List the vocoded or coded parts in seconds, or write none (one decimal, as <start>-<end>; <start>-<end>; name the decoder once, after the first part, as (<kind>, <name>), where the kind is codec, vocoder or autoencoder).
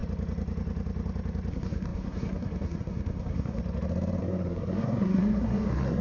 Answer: 1.5-3.6 (codec, SNAC); 4.2-6.0